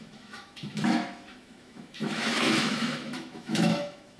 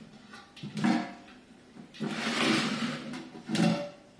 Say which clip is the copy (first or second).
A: first